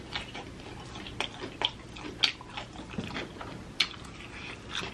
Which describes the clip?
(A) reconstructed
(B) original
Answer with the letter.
B